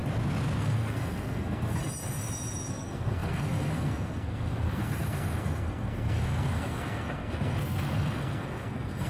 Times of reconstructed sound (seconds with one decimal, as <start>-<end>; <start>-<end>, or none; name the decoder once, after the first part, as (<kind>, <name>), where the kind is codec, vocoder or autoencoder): 0.6-1.8 (codec, SNAC); 2.7-9.1